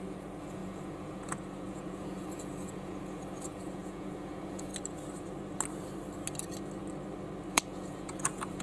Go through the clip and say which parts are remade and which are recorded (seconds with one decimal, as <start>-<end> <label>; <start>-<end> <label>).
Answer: 0.0-4.7 remade; 4.7-7.5 recorded; 7.5-8.6 remade